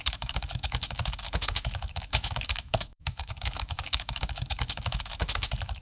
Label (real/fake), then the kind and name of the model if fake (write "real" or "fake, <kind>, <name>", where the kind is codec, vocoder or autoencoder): fake, autoencoder, DAC-VAE